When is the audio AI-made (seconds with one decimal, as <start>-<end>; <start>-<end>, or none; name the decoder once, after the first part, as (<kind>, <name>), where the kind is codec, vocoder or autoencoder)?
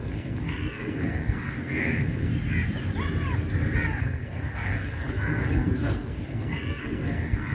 0.0-2.3 (codec, SNAC); 4.0-7.5